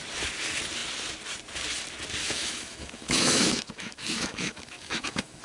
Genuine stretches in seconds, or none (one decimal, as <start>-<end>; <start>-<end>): 0.0-2.2